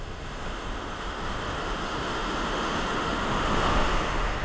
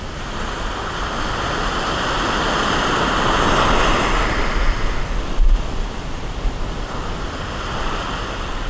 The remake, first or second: first